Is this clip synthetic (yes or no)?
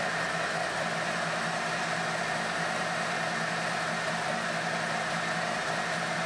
no